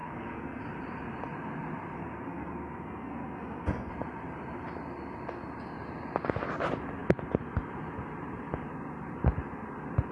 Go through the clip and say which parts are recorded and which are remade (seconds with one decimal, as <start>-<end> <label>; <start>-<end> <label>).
0.0-0.6 remade; 0.6-2.0 recorded; 2.0-3.9 remade; 3.9-10.1 recorded